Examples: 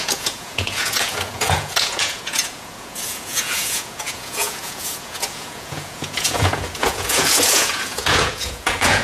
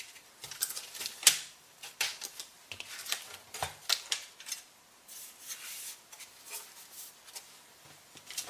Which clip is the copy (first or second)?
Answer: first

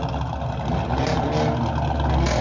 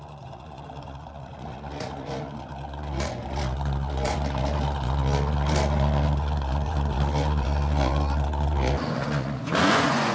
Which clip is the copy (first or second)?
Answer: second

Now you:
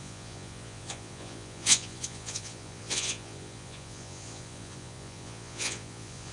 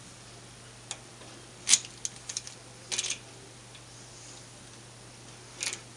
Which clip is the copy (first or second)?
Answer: first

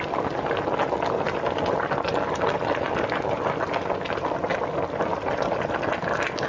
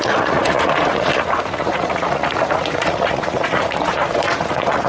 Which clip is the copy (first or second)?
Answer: second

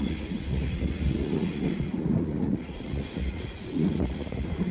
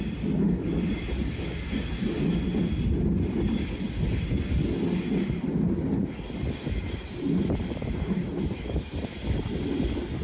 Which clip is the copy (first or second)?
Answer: first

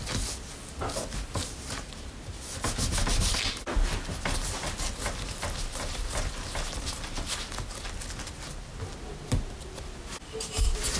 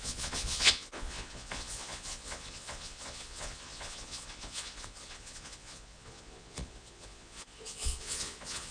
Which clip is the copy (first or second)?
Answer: second